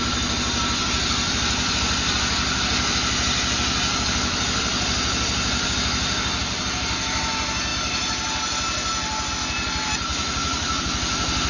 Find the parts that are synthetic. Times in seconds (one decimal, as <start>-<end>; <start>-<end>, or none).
10.1-10.8